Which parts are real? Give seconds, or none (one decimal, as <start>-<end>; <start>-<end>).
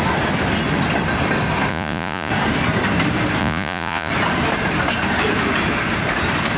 0.0-1.7; 2.3-3.4; 4.1-6.6